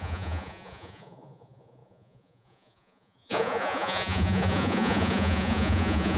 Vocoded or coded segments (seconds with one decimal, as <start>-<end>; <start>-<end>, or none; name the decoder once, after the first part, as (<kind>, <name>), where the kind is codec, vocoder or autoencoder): 0.0-6.2 (vocoder, Vocos)